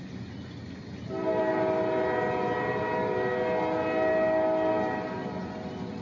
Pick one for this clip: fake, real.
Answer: real